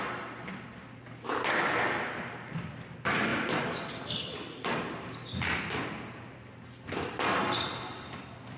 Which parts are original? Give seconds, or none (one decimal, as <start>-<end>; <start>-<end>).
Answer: 0.0-8.6